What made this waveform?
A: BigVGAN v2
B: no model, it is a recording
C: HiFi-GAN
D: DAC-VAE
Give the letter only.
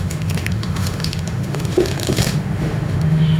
D